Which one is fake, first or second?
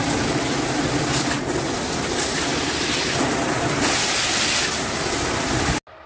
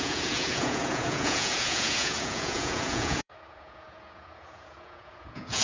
second